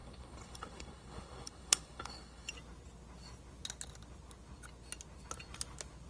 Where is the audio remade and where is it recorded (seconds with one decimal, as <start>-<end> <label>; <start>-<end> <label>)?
0.0-2.5 remade; 2.5-6.1 recorded